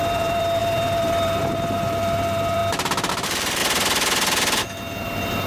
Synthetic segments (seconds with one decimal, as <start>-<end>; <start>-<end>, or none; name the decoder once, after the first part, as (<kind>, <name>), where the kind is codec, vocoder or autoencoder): 0.0-2.6 (vocoder, BigVGAN v2); 3.1-3.6; 4.6-5.5